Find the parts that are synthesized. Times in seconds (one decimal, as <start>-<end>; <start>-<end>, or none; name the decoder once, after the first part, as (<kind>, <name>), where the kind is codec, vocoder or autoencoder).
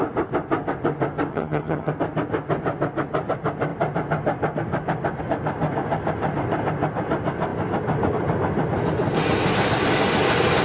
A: 1.3-1.9 (vocoder, HiFi-GAN)